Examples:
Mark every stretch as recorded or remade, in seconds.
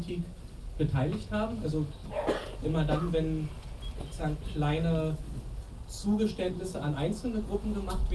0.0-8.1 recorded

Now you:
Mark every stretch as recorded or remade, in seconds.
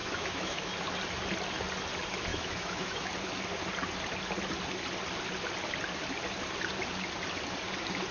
0.0-0.7 remade; 0.7-2.3 recorded; 2.3-3.1 remade; 3.1-8.1 recorded